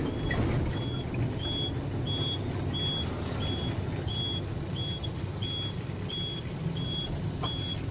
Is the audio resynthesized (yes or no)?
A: no